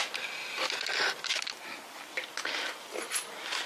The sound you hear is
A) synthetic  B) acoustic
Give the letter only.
B